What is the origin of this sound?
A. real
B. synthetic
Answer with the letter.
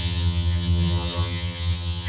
B